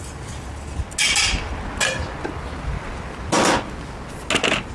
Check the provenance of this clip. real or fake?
real